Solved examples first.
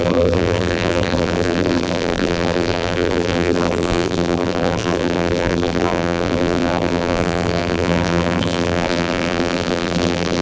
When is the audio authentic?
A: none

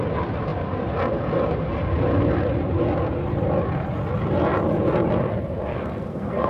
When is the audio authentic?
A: 0.0-5.7

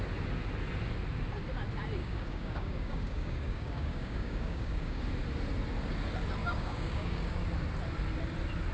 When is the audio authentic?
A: 0.0-2.0; 5.0-6.4; 7.4-8.7

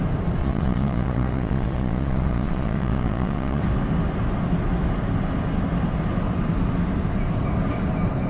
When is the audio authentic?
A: 0.0-0.4; 3.6-8.3

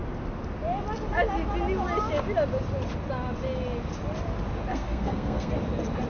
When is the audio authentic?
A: 0.0-4.7; 5.5-6.1